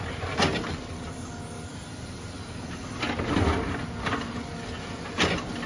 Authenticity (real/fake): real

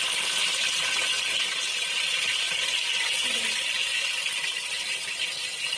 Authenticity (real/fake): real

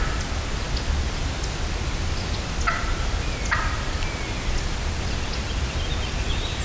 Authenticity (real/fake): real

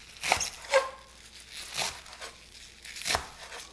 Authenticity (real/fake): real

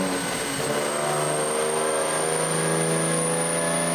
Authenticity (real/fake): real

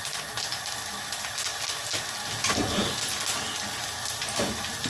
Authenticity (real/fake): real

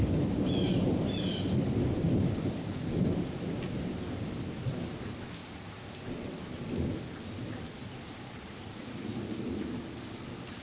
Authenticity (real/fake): real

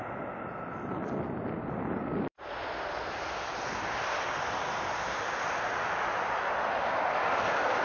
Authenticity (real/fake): real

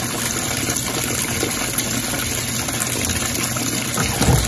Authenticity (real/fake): real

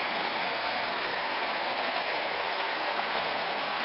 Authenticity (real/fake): fake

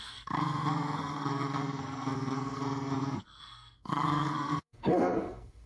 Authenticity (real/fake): fake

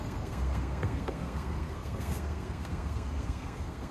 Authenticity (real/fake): fake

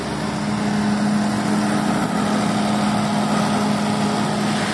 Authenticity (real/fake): real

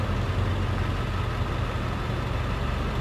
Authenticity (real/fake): real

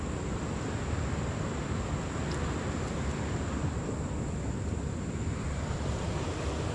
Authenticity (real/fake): real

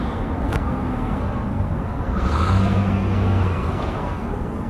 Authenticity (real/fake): fake